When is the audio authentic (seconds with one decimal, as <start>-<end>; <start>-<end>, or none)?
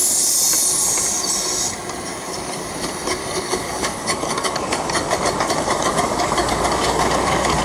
0.0-2.1; 2.7-3.2